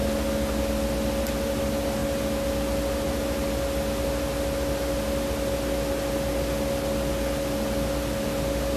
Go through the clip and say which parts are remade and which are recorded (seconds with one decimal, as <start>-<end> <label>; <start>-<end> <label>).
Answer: 0.0-8.8 recorded